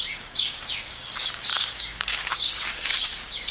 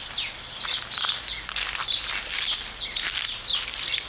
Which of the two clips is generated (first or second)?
first